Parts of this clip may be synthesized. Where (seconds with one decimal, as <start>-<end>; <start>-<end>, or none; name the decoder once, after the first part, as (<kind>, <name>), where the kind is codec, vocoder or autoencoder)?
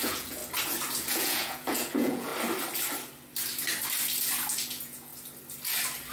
0.0-0.4 (vocoder, Vocos); 1.1-2.3; 4.5-5.1